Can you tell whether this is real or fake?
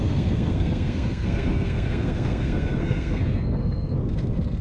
fake